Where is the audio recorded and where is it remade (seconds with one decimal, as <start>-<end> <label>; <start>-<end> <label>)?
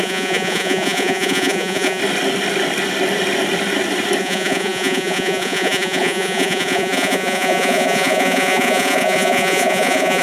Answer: 0.0-2.0 remade; 2.0-4.2 recorded; 4.2-10.2 remade